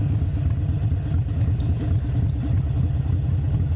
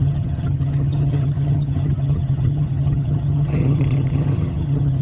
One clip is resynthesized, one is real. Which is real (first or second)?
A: first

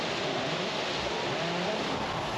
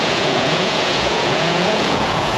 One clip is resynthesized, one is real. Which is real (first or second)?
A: first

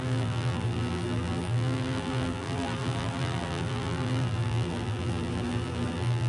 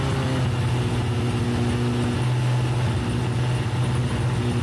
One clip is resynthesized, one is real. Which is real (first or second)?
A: second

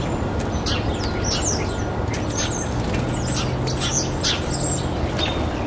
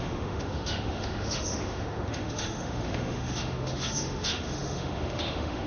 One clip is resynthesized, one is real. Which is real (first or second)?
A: first